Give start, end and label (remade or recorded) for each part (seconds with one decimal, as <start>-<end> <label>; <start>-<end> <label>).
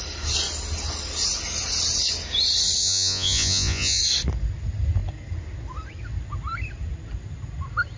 0.0-2.8 recorded; 2.8-4.0 remade; 4.0-8.0 recorded